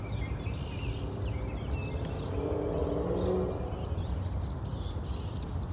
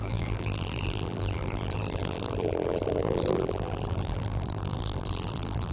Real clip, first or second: first